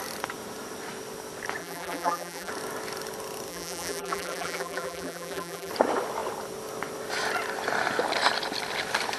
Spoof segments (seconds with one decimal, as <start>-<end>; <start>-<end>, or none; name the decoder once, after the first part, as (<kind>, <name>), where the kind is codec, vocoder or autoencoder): 1.6-2.5 (vocoder, BigVGAN v2); 3.5-5.7